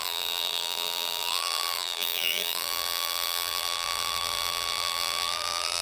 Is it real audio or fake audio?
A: fake